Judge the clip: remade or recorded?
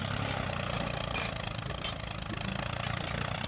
recorded